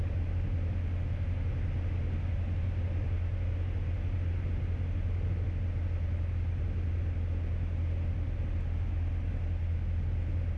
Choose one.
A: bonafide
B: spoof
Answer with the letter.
A